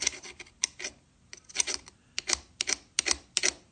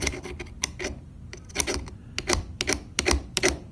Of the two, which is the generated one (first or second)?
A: second